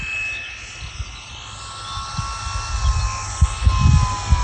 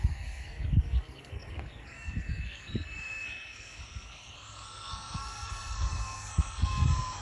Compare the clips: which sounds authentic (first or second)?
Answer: first